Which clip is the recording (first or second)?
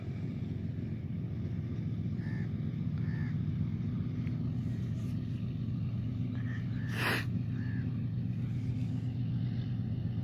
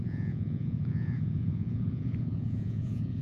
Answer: first